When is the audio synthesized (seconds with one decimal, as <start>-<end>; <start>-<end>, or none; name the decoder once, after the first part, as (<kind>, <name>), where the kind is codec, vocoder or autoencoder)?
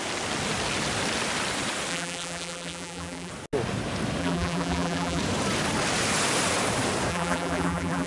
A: 1.9-3.3 (vocoder, BigVGAN v2); 4.2-5.2; 7.1-8.1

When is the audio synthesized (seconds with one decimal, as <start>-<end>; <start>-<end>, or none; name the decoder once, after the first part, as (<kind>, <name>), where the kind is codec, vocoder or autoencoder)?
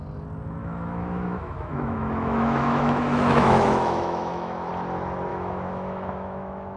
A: 0.6-4.7 (autoencoder, DAC-VAE); 5.3-6.8